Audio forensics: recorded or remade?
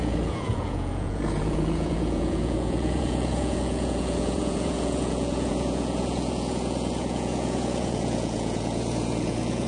remade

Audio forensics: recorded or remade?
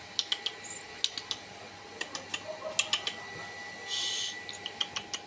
recorded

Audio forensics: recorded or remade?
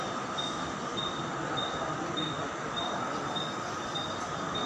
recorded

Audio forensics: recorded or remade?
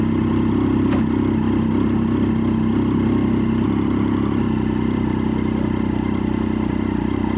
recorded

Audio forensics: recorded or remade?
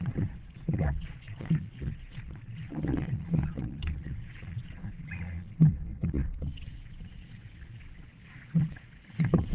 remade